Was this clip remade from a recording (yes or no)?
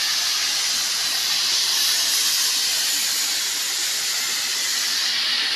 no